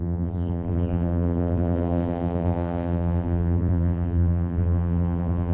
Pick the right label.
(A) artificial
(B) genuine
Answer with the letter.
A